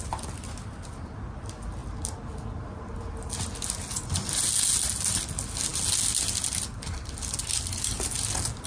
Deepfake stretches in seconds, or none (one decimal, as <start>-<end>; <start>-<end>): none